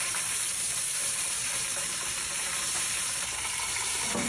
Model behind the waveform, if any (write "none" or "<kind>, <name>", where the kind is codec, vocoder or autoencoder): vocoder, BigVGAN v2